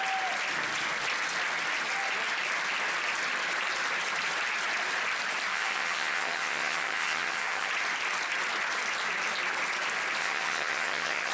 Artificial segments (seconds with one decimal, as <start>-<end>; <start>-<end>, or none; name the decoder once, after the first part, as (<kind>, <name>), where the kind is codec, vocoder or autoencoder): 5.5-7.7 (vocoder, HiFi-GAN); 10.2-11.3